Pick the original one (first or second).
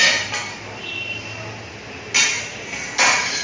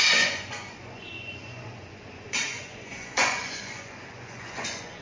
first